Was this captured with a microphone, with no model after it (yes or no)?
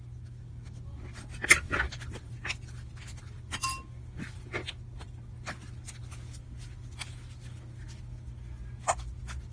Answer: yes